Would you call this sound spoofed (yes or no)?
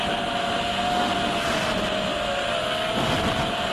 no